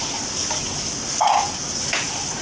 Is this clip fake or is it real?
real